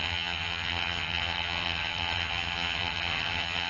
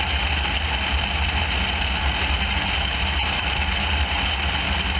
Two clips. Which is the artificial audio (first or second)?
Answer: first